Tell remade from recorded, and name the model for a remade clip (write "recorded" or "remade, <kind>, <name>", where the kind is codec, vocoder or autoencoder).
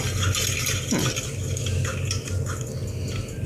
recorded